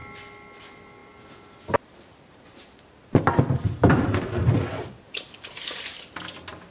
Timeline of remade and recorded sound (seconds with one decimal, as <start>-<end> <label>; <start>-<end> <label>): 0.0-0.6 recorded; 0.6-6.7 remade